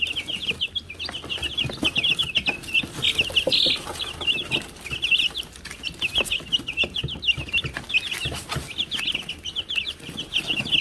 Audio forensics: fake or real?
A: real